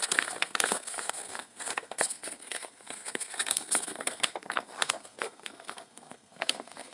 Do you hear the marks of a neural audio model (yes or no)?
yes